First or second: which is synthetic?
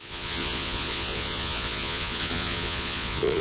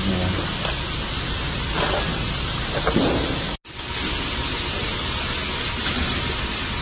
first